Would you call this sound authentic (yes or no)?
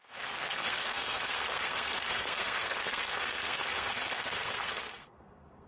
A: no